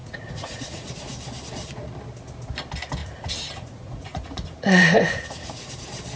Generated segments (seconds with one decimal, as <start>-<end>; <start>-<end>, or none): 0.0-0.9; 3.0-5.7